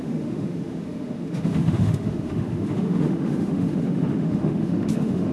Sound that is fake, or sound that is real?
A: fake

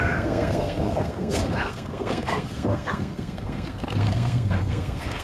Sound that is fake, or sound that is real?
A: fake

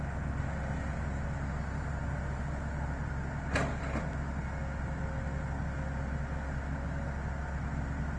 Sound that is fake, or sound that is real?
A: real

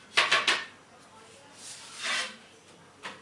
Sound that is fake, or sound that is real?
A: real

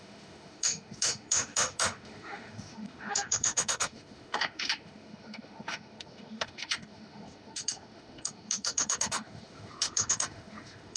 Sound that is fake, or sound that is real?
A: fake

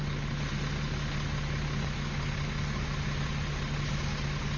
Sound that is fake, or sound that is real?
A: real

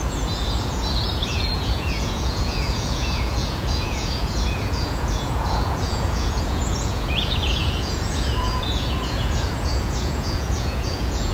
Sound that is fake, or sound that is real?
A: fake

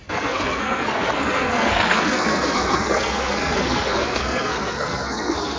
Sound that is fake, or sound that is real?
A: fake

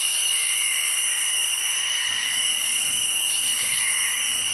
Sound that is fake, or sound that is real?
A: fake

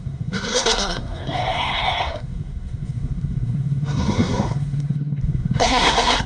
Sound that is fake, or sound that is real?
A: fake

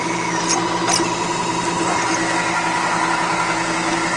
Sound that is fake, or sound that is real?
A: real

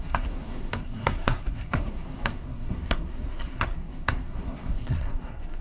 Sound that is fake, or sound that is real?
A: fake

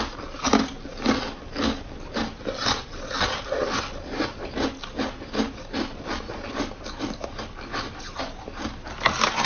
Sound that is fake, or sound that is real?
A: real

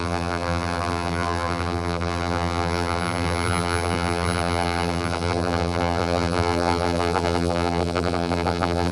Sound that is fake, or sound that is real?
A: fake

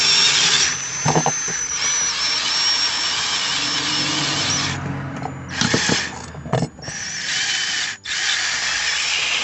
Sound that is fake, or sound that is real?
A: real